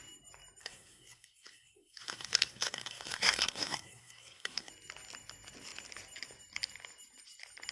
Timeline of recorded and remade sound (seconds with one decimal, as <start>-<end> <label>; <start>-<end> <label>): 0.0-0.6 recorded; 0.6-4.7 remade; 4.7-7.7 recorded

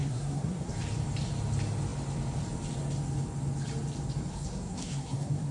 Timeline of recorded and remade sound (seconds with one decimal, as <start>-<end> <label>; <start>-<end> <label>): 0.0-0.7 remade; 0.7-4.3 recorded; 4.3-5.5 remade

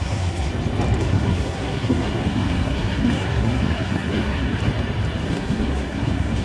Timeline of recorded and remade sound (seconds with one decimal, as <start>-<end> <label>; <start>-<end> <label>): 0.0-0.5 remade; 0.5-1.0 recorded; 1.0-4.6 remade; 4.6-5.3 recorded; 5.3-6.4 remade